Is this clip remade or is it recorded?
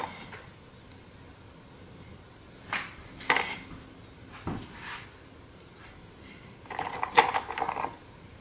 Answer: recorded